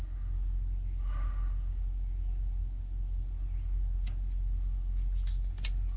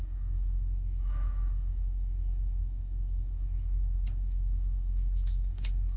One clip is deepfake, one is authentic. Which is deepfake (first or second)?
second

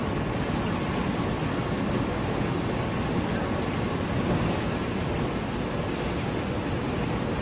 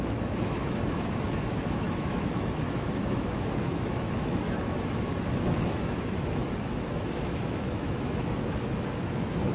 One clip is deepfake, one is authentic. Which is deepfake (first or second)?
second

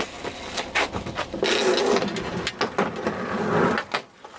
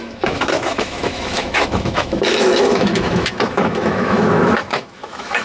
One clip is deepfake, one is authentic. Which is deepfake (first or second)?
second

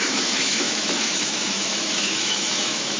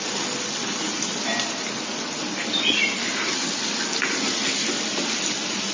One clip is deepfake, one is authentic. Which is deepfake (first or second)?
first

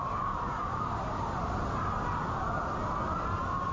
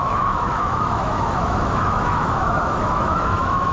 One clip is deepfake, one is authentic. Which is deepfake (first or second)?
second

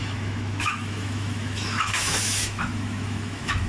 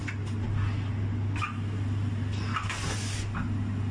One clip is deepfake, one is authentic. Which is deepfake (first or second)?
first